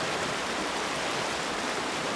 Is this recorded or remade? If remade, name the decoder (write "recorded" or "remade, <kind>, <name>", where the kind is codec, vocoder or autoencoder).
recorded